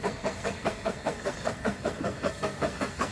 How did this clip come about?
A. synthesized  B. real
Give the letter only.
A